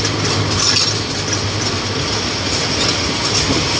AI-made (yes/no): no